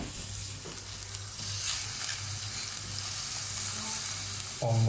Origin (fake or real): real